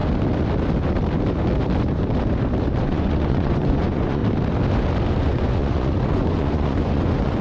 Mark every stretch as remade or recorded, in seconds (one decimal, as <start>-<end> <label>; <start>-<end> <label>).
0.0-2.8 recorded; 2.8-4.2 remade; 4.2-5.2 recorded; 5.2-7.4 remade